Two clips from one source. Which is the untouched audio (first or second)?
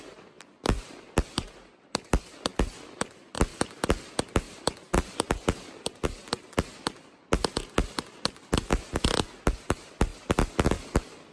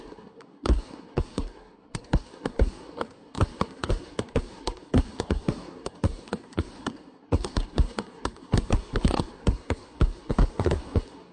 first